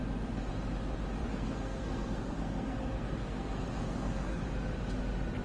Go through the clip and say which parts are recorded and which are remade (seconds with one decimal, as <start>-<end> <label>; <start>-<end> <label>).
0.0-1.2 recorded; 1.2-4.4 remade; 4.4-5.4 recorded